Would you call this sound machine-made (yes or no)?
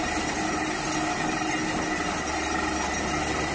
no